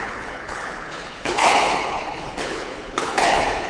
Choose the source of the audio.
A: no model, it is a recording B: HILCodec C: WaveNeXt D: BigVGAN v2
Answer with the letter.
B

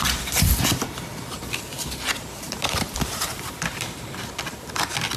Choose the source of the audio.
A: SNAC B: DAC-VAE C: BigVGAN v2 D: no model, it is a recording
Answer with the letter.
C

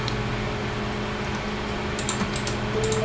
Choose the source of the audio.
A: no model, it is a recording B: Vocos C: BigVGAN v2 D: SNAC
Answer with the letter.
A